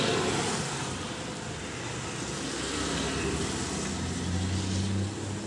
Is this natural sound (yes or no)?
yes